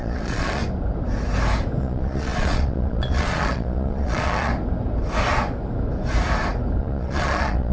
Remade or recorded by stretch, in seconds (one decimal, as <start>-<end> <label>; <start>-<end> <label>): 0.0-0.6 remade; 0.6-1.8 recorded; 1.8-4.5 remade; 4.5-6.8 recorded; 6.8-7.7 remade